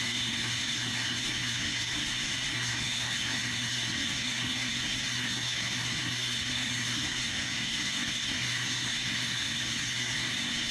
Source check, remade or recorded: remade